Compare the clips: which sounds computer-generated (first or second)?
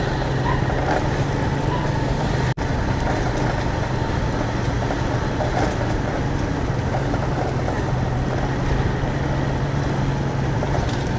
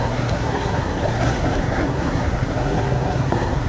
second